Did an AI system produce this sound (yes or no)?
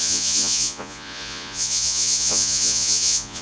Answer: yes